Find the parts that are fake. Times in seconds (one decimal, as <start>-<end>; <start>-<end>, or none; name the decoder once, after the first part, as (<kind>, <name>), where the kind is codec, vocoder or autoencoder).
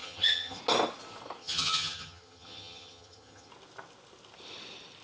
0.0-0.6 (vocoder, HiFi-GAN); 1.4-3.5